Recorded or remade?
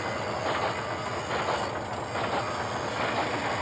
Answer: recorded